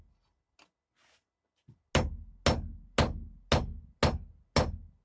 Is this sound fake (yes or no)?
no